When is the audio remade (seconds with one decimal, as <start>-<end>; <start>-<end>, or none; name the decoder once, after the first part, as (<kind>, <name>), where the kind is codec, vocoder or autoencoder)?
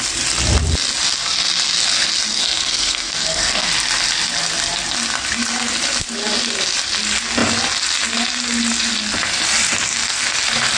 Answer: 2.3-3.7 (codec, SNAC); 9.9-10.4